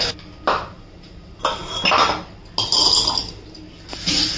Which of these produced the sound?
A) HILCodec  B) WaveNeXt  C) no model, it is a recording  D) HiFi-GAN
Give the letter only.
C